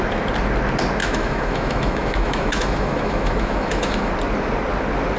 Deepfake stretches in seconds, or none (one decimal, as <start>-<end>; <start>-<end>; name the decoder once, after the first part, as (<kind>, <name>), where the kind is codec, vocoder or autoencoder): 1.0-4.1 (autoencoder, DAC-VAE)